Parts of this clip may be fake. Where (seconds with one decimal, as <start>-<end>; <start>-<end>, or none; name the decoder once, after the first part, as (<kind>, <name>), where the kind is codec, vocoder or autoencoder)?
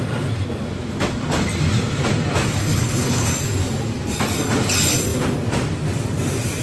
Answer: 2.6-3.3 (codec, HILCodec)